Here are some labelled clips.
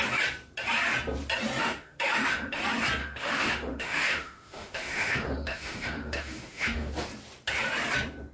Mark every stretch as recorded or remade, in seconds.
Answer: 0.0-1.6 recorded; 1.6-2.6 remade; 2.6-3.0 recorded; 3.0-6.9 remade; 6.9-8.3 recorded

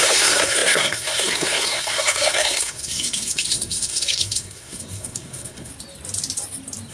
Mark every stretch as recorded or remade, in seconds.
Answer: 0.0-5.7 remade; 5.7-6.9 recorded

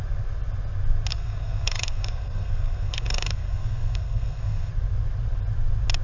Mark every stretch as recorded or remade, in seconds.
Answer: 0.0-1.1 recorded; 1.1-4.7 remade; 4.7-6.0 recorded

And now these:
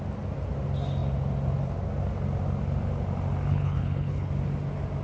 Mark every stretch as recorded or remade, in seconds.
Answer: 0.0-3.5 recorded; 3.5-4.3 remade; 4.3-5.0 recorded

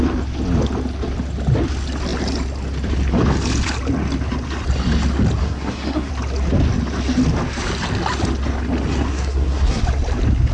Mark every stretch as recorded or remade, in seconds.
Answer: 0.0-5.4 recorded; 5.4-6.1 remade; 6.1-9.1 recorded; 9.1-9.8 remade; 9.8-10.5 recorded

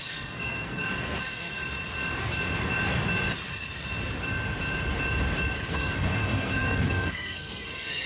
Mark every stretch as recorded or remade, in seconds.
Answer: 0.0-1.6 remade; 1.6-5.7 recorded; 5.7-8.1 remade

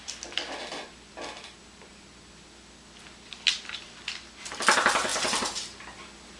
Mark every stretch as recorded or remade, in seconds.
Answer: 0.0-5.1 recorded; 5.1-5.8 remade; 5.8-6.4 recorded

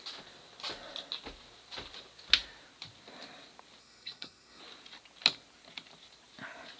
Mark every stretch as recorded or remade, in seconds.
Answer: 0.0-3.8 recorded; 3.8-4.6 remade; 4.6-6.8 recorded